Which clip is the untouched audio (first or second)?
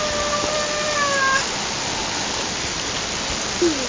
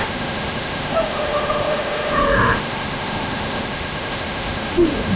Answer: first